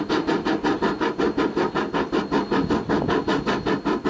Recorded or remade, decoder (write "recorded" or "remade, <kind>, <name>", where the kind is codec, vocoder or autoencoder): recorded